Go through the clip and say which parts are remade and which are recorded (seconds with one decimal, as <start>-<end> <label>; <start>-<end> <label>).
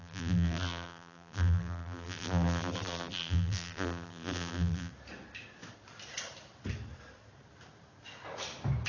0.0-4.9 remade; 4.9-8.9 recorded